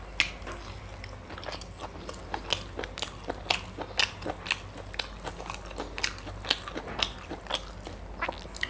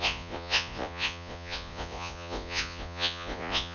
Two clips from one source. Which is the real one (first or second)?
first